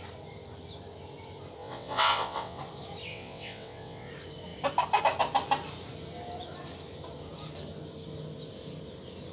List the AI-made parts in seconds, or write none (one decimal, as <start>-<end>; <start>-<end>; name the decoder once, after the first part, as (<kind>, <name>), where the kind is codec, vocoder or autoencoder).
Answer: 1.6-2.6 (vocoder, WaveNeXt); 3.1-4.1